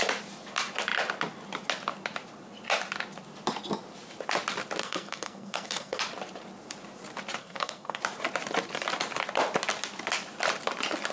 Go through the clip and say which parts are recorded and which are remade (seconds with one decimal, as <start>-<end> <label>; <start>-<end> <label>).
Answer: 0.0-4.8 recorded; 4.8-6.0 remade; 6.0-7.4 recorded; 7.4-8.0 remade; 8.0-11.1 recorded